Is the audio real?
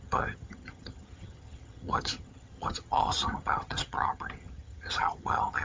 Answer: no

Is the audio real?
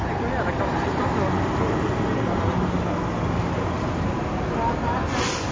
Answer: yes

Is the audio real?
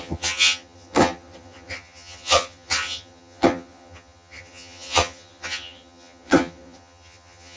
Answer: no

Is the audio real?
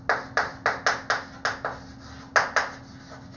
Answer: yes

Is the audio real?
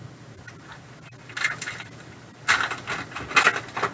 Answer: yes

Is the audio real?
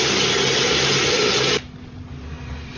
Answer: yes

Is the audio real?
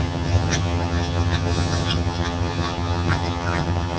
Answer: no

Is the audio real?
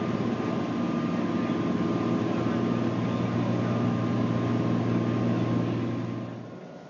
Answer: yes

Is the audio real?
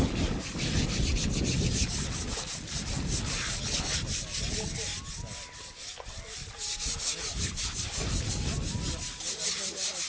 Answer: yes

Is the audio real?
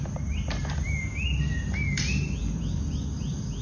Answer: yes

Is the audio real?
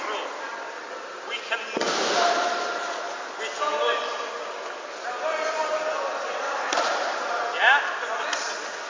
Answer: yes